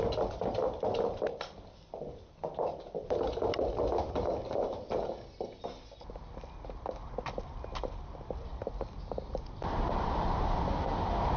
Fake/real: fake